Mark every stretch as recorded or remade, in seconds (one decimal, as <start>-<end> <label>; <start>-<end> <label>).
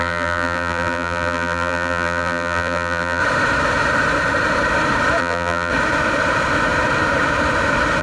0.0-3.2 remade; 3.2-5.2 recorded; 5.2-5.7 remade; 5.7-8.0 recorded